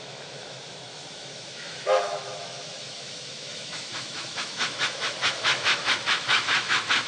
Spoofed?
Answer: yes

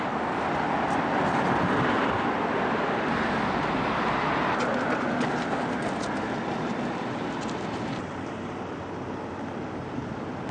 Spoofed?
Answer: no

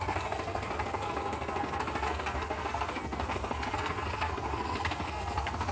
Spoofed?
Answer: yes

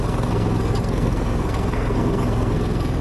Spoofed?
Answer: yes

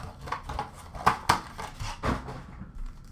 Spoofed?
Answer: no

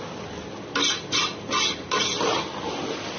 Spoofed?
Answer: no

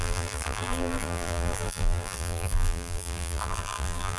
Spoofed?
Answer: yes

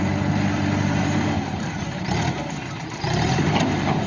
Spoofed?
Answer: yes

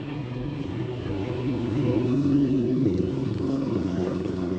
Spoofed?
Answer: yes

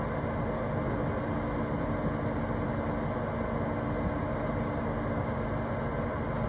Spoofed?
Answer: no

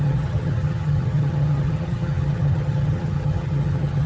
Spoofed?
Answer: yes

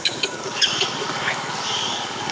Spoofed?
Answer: yes